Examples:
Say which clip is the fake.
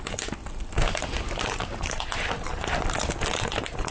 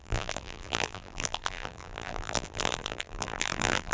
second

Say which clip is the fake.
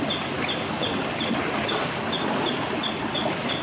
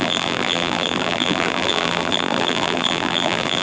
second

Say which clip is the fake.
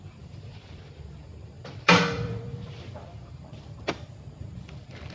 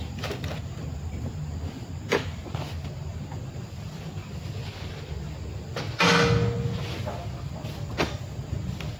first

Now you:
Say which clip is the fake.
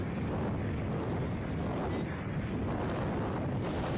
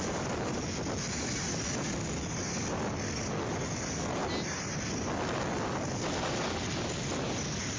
first